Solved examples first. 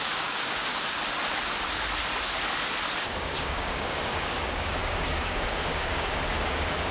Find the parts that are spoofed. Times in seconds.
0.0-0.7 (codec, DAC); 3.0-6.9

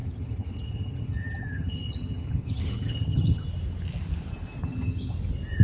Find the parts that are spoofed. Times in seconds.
0.0-3.4 (vocoder, HiFi-GAN); 4.6-5.1

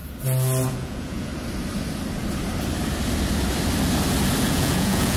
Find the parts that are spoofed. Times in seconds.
0.7-1.3 (vocoder, Vocos); 4.4-5.2

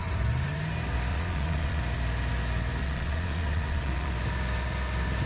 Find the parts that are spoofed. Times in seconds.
1.1-1.8 (vocoder, Vocos); 2.8-4.1

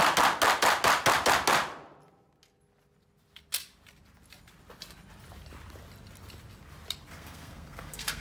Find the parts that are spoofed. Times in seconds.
7.1-8.2 (codec, SNAC)

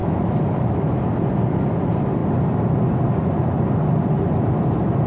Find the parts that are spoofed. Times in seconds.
0.0-1.0 (autoencoder, DAC-VAE)